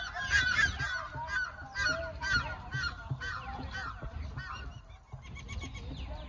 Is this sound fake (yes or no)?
no